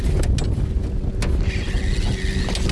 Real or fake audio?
real